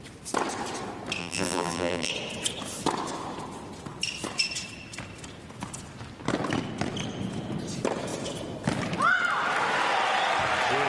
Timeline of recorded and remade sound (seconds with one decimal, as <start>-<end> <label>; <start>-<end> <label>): 0.0-1.2 recorded; 1.2-2.1 remade; 2.1-10.9 recorded